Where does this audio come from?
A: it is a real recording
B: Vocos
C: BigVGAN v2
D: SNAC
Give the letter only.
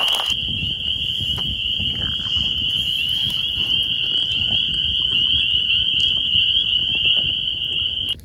A